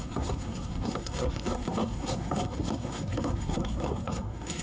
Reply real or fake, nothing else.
fake